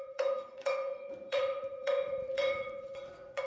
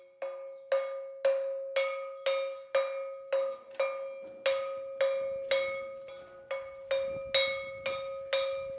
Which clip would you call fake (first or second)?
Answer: first